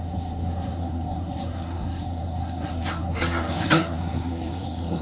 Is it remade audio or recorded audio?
remade